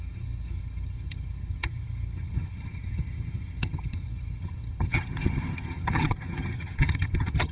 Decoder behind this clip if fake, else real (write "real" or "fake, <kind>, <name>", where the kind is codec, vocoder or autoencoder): fake, vocoder, HiFi-GAN